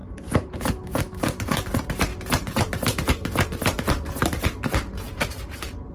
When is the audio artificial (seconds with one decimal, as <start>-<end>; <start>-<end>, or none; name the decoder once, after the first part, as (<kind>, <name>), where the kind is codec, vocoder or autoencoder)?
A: 0.0-1.7 (vocoder, BigVGAN v2); 2.1-5.9